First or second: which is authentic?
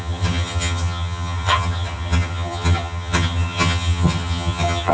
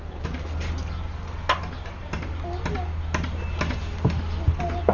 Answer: second